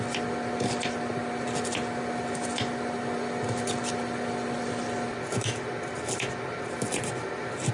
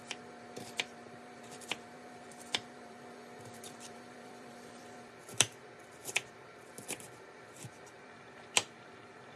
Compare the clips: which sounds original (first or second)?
first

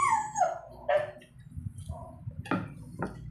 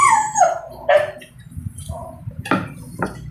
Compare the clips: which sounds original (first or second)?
first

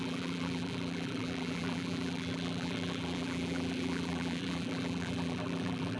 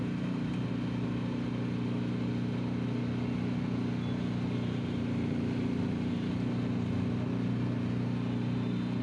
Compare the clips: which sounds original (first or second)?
second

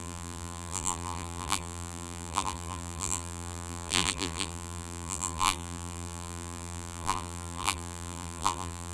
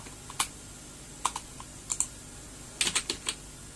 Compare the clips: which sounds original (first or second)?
second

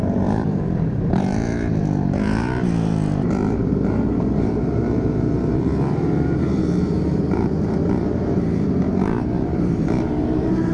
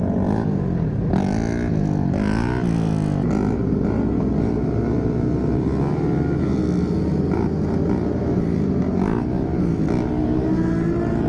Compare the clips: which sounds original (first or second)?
second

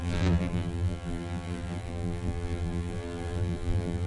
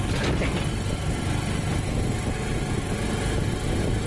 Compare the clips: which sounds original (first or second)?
second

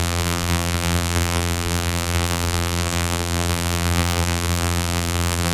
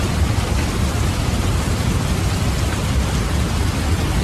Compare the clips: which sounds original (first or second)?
second